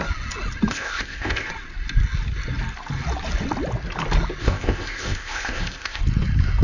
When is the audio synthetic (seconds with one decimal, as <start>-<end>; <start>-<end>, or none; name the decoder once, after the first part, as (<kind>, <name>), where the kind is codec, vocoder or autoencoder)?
0.7-1.5 (codec, ZipCodec); 4.4-6.0